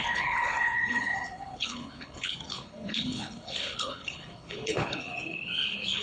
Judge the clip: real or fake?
fake